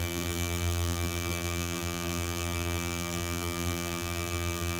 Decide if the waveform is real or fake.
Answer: fake